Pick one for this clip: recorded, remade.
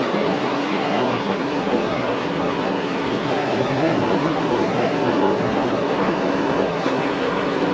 remade